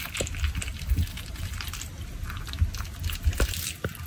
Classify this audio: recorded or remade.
recorded